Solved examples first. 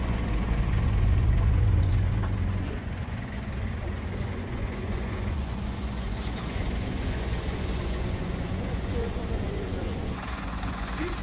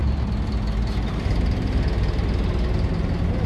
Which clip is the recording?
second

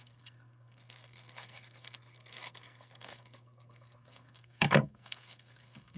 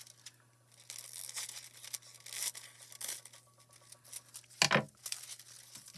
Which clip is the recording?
second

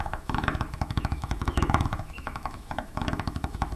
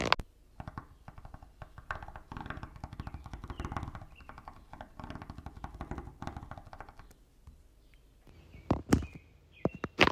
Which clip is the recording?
second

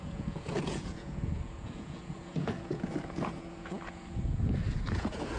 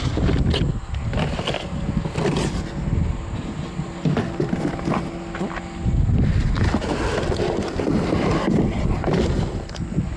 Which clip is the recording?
second